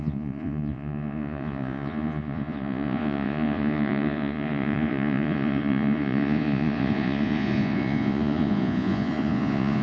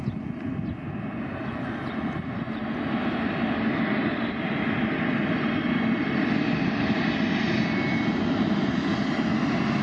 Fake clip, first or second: first